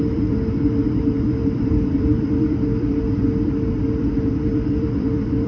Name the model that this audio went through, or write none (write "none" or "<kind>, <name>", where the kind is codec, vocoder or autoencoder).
vocoder, BigVGAN v2